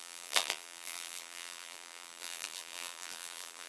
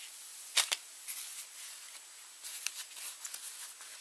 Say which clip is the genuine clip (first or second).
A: second